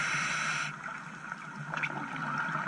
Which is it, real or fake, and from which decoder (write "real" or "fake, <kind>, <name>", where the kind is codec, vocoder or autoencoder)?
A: real